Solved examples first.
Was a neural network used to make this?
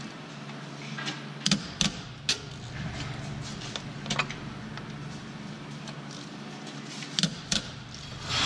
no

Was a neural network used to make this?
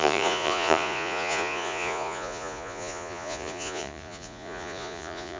yes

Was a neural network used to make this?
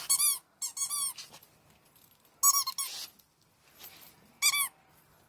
no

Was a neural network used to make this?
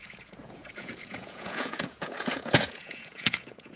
yes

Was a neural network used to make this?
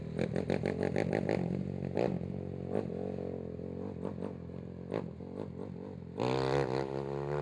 no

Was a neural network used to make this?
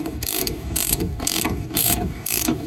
yes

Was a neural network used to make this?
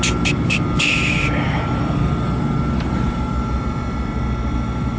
no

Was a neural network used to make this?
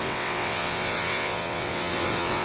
yes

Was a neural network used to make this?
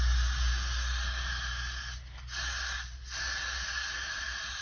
no